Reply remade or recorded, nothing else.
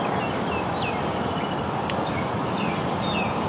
recorded